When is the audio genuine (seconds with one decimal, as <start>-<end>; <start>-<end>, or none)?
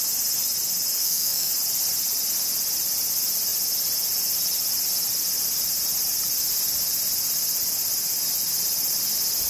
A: 0.0-1.0; 1.5-9.5